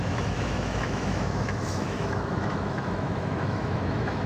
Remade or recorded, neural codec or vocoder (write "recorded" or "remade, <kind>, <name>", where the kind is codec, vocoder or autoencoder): remade, autoencoder, DAC-VAE